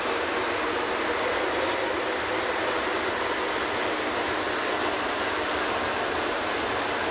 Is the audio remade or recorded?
recorded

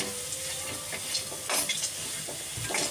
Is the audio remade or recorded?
recorded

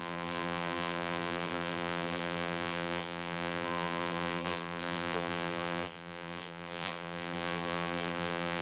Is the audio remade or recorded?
remade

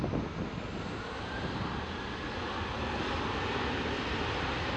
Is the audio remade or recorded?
recorded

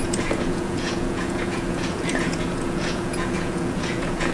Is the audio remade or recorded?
remade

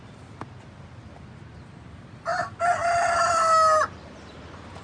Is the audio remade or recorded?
recorded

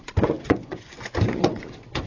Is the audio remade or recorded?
remade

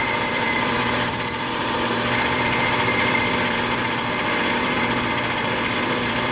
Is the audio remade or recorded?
remade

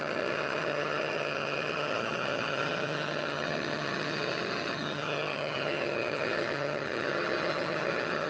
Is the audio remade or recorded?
remade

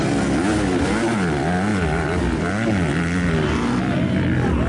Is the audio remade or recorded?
recorded